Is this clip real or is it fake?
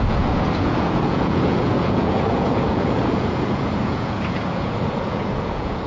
fake